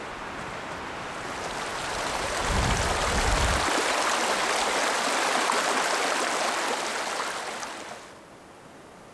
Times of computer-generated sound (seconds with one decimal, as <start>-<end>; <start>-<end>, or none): none